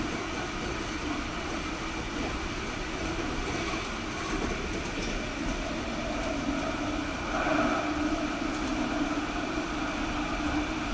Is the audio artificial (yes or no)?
no